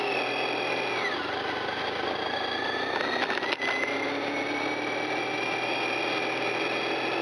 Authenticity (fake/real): real